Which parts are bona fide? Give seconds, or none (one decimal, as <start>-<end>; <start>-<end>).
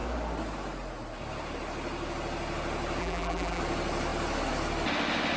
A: 0.0-3.0; 3.6-5.4